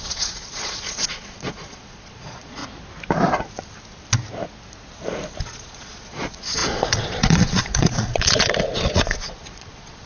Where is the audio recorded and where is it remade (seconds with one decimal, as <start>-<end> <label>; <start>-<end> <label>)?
0.0-2.6 remade; 2.6-5.4 recorded; 5.4-10.1 remade